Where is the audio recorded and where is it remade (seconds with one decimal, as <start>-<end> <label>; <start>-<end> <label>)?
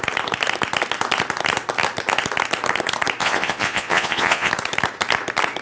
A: 0.0-3.2 recorded; 3.2-4.5 remade; 4.5-5.6 recorded